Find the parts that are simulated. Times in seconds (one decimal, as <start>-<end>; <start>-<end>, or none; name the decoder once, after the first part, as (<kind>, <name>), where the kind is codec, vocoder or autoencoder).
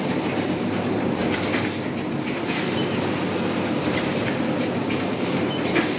0.0-1.2 (vocoder, BigVGAN v2); 3.8-6.0